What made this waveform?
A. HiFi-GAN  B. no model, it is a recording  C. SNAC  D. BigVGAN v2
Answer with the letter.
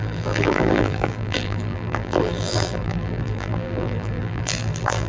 D